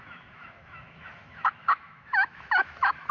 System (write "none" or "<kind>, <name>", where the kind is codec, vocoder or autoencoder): autoencoder, DAC-VAE